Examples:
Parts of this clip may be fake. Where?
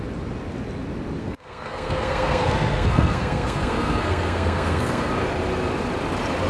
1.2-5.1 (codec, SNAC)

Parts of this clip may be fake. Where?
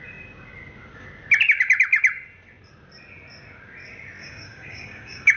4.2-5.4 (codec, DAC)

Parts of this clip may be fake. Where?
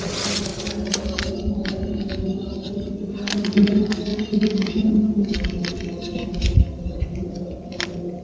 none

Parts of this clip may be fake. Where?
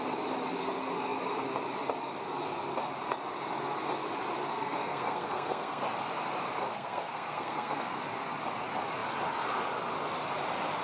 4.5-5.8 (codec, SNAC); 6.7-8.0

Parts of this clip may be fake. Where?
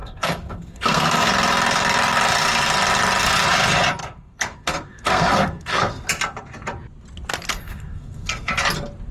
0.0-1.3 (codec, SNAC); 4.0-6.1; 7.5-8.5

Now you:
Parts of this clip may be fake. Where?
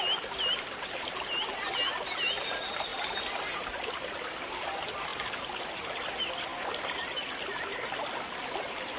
none